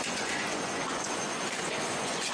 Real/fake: fake